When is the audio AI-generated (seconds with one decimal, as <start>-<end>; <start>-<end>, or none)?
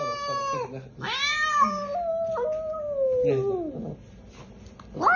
none